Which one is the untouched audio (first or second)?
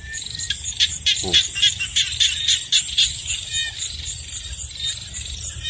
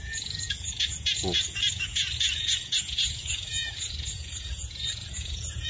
first